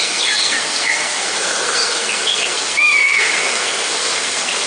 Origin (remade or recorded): remade